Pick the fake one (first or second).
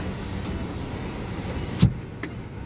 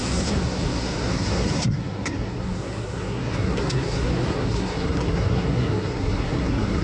second